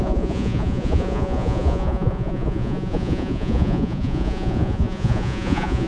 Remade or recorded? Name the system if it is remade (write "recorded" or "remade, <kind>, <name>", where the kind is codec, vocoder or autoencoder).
remade, vocoder, Vocos